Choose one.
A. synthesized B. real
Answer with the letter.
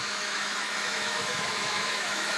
A